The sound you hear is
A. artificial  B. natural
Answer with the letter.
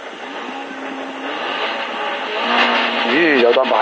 B